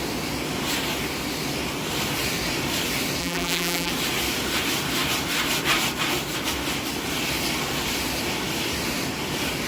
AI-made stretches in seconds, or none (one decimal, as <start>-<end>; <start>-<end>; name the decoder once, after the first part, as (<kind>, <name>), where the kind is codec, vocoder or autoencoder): 3.2-3.9 (vocoder, BigVGAN v2)